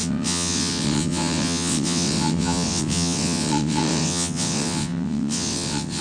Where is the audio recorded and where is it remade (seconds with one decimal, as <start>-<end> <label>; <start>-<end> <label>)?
0.0-6.0 remade